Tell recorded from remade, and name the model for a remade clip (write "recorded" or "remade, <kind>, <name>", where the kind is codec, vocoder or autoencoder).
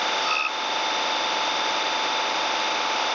recorded